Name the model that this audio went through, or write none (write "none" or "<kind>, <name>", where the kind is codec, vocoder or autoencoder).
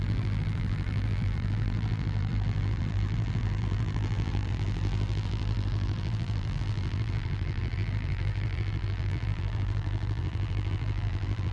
vocoder, BigVGAN v2